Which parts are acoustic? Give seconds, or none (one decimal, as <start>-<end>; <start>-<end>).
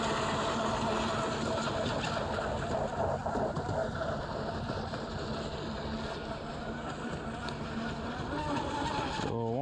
0.0-9.6